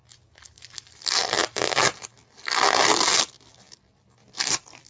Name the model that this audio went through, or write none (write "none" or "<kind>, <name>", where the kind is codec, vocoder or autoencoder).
none